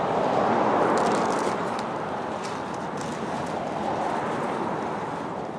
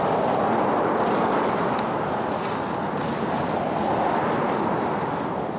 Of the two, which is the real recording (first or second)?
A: second